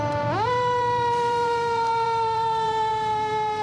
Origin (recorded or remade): remade